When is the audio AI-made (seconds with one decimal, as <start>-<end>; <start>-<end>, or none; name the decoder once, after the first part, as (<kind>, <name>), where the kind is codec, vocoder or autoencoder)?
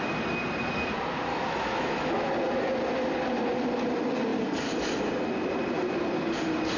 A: 1.3-2.3 (autoencoder, DAC-VAE)